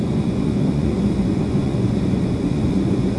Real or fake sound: fake